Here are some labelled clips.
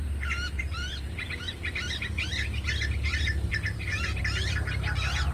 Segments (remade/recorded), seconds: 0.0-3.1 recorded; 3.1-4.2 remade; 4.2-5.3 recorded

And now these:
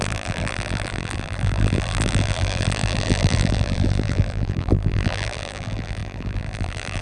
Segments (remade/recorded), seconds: 0.0-7.0 remade

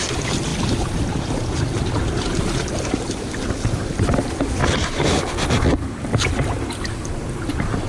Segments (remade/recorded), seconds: 0.0-0.5 recorded; 0.5-3.5 remade; 3.5-4.6 recorded; 4.6-5.1 remade; 5.1-7.9 recorded